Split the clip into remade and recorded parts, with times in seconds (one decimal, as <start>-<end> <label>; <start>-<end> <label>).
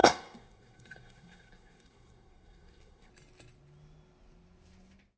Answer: 0.0-3.1 remade; 3.1-5.2 recorded